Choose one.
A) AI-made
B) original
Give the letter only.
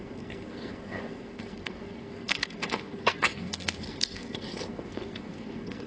A